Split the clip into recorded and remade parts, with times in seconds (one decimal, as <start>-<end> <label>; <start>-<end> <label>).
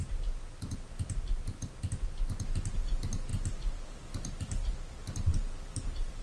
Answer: 0.0-3.3 recorded; 3.3-4.7 remade; 4.7-5.3 recorded; 5.3-6.2 remade